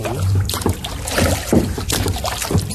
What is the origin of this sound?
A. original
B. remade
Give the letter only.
A